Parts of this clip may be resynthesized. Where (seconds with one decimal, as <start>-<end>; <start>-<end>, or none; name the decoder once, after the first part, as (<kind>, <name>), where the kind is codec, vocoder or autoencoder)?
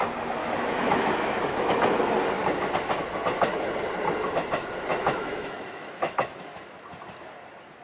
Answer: 0.4-1.8 (autoencoder, DAC-VAE); 4.9-6.6